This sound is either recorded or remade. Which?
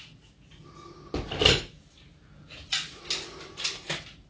recorded